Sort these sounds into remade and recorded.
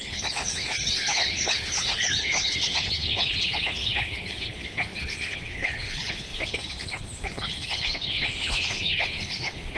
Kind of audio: remade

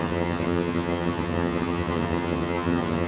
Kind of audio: remade